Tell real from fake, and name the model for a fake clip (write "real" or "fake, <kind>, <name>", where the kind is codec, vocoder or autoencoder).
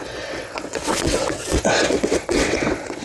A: fake, vocoder, WaveNeXt